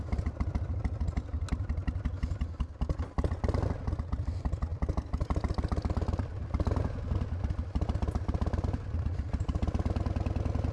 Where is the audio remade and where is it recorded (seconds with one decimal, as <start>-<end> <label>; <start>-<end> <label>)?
0.0-10.7 recorded